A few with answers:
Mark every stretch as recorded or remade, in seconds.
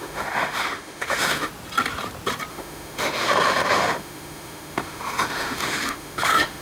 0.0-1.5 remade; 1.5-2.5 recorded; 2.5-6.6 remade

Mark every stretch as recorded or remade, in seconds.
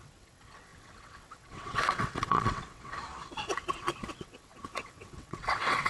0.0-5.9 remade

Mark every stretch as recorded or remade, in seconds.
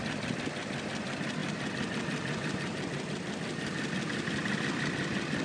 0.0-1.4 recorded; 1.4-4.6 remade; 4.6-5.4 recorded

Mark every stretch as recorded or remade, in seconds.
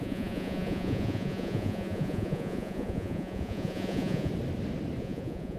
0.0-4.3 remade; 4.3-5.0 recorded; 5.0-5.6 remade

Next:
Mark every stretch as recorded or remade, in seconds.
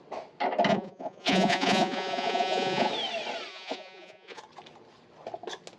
0.0-0.7 recorded; 0.7-2.9 remade; 2.9-3.5 recorded; 3.5-4.4 remade; 4.4-5.8 recorded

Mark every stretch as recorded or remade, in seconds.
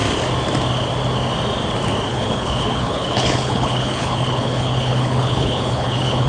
0.0-2.1 recorded; 2.1-6.3 remade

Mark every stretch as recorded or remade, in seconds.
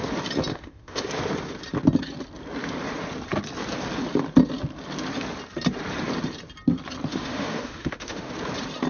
0.0-0.5 recorded; 0.5-1.1 remade; 1.1-7.1 recorded; 7.1-8.3 remade; 8.3-8.9 recorded